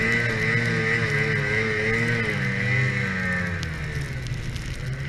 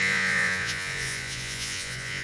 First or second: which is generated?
second